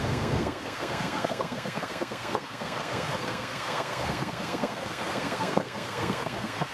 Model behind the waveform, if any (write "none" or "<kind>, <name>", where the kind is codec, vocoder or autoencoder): codec, SNAC